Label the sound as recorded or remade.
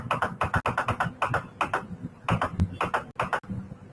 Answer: recorded